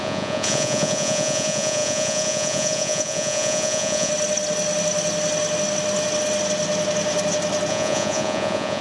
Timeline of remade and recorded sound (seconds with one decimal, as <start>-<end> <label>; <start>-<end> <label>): 0.0-4.1 remade; 4.1-7.7 recorded; 7.7-8.8 remade